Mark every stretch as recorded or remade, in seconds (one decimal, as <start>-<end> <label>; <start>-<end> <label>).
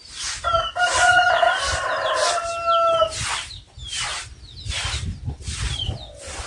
0.0-0.9 recorded; 0.9-1.4 remade; 1.4-6.5 recorded